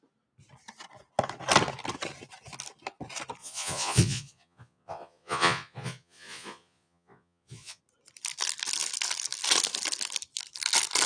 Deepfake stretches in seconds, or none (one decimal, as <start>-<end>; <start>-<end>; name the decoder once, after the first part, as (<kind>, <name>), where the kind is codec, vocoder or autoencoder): 3.4-7.8 (vocoder, Vocos)